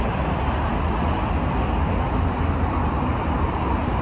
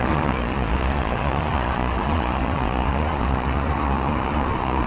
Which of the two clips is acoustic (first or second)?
first